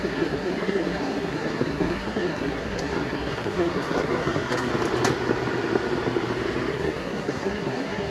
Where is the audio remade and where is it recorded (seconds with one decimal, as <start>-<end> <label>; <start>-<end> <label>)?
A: 0.0-4.7 remade; 4.7-6.7 recorded; 6.7-8.1 remade